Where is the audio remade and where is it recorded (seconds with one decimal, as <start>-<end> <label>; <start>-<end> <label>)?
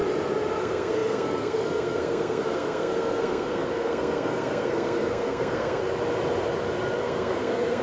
0.0-0.6 recorded; 0.6-5.8 remade; 5.8-7.0 recorded; 7.0-7.8 remade